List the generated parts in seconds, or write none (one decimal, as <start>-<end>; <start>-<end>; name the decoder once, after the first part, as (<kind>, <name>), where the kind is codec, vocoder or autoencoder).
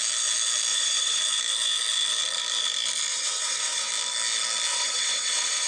0.7-1.2 (vocoder, WaveNeXt); 3.1-3.9; 4.7-5.7